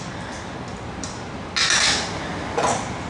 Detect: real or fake real